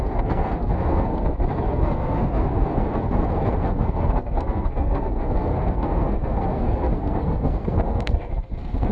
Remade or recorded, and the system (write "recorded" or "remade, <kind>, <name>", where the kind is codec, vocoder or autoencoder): remade, codec, SNAC